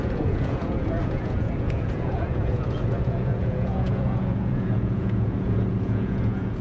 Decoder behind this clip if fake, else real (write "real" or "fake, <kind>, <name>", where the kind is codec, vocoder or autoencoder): fake, vocoder, Vocos